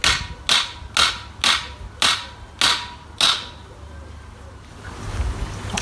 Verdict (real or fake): real